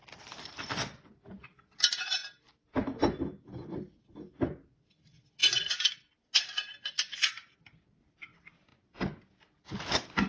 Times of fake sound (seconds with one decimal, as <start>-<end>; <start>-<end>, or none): none